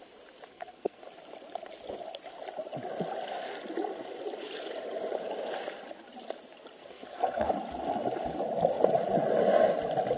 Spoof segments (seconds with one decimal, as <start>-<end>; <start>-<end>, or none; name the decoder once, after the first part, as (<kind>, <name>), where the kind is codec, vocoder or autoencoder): 0.5-1.0 (codec, SNAC); 6.8-7.5

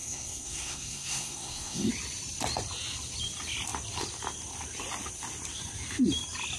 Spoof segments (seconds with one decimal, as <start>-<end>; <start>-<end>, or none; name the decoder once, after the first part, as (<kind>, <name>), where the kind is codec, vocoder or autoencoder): 0.0-1.9 (codec, SNAC)

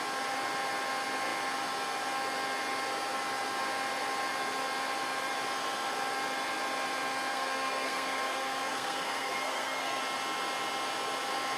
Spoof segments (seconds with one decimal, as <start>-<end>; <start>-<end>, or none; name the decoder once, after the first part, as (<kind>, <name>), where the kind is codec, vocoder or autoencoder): 7.3-10.0 (codec, SNAC)